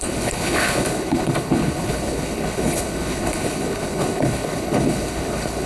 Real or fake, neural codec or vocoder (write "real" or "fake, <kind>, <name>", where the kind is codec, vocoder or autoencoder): fake, codec, HILCodec